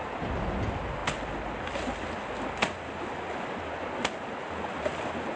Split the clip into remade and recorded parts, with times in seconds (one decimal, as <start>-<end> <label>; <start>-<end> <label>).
0.0-5.4 recorded